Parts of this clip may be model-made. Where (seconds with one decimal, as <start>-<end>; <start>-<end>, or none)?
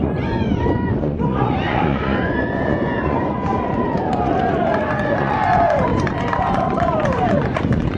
0.0-8.0